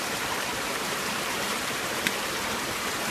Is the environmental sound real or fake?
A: fake